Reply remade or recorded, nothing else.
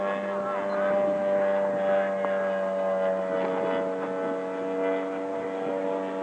recorded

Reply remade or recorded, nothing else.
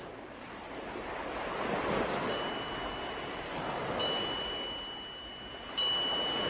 recorded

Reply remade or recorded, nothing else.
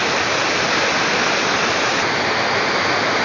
recorded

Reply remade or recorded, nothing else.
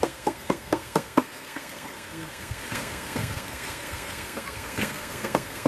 remade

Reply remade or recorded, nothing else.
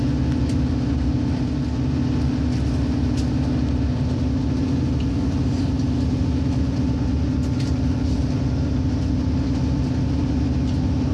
recorded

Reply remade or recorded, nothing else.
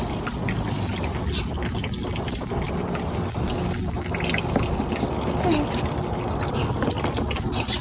recorded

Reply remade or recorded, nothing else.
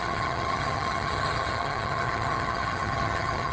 remade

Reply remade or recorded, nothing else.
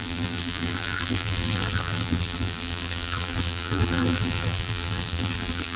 remade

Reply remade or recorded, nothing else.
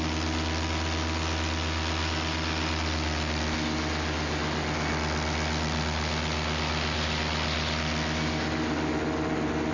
recorded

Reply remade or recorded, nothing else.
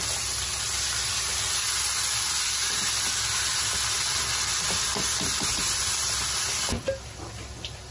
recorded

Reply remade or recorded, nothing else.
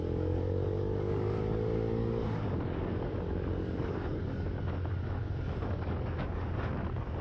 remade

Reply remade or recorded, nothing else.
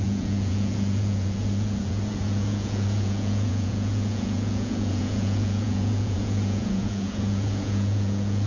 remade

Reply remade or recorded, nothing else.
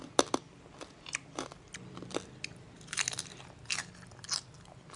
recorded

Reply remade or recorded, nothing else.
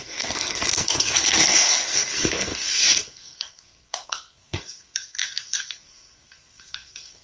remade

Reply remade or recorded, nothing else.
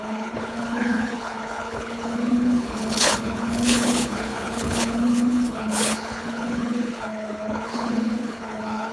remade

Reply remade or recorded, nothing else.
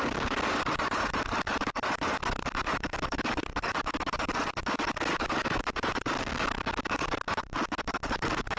remade